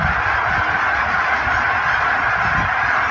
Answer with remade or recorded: recorded